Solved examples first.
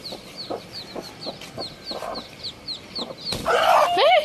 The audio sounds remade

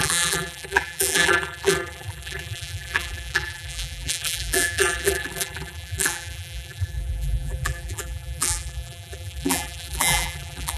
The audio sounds remade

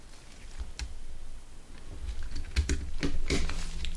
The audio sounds recorded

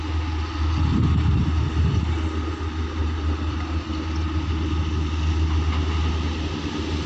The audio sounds recorded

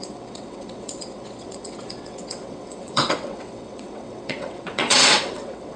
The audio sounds remade